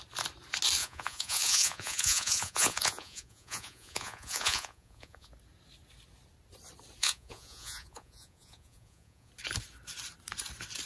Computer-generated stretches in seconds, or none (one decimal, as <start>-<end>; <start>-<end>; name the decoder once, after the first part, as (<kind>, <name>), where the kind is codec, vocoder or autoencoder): 0.8-5.3 (vocoder, Vocos); 7.0-9.3